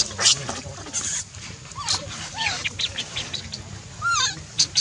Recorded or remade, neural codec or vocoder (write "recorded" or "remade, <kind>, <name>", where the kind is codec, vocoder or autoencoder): recorded